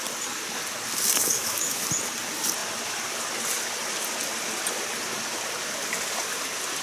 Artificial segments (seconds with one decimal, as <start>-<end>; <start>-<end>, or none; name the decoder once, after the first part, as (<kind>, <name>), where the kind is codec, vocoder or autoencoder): 1.2-1.8 (autoencoder, DAC-VAE)